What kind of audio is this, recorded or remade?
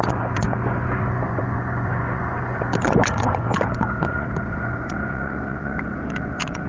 remade